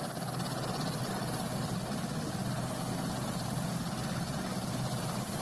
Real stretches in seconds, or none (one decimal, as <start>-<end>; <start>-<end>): 0.0-5.4